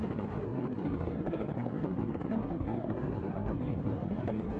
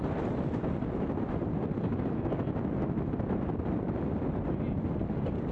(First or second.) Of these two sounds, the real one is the second